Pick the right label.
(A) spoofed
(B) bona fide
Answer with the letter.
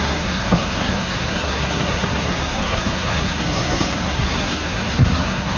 A